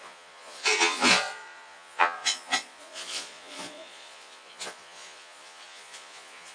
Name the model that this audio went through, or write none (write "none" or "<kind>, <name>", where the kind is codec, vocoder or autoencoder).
vocoder, Vocos